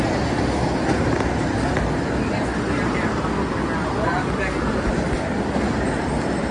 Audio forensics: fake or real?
real